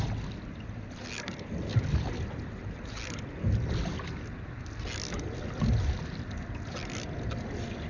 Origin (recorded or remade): recorded